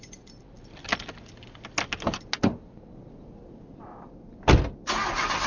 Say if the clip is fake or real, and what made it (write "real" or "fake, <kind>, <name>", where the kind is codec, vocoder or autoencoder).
real